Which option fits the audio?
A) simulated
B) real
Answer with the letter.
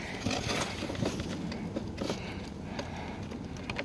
B